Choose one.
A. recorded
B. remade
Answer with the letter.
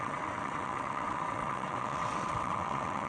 B